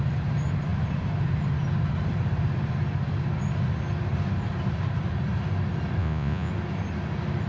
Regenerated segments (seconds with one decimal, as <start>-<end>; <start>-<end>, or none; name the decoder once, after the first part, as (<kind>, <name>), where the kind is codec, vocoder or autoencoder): 6.0-6.5 (vocoder, Vocos)